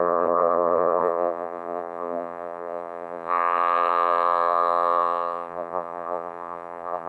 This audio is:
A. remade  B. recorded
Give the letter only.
A